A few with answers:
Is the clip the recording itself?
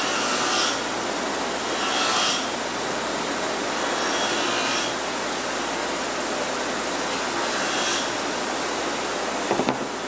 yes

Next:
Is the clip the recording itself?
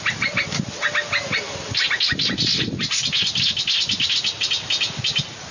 yes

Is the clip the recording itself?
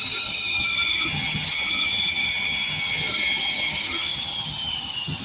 no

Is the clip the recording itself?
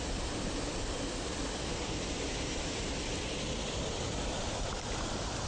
yes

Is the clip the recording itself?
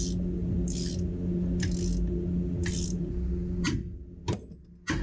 yes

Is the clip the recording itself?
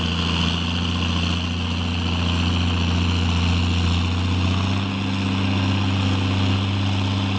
yes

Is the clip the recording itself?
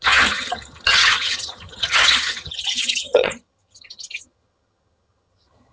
no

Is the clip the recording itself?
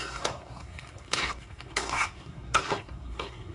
no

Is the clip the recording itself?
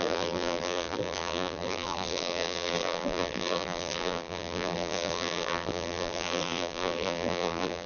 no